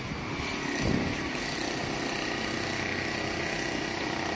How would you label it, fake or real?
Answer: real